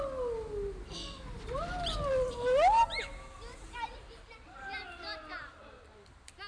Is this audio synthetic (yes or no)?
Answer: no